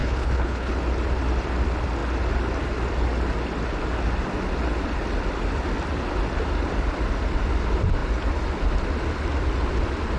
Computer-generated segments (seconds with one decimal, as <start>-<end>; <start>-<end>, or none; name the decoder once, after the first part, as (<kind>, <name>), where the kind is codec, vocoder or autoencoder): 0.0-0.7 (codec, HILCodec)